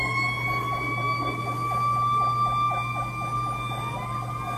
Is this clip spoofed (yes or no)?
no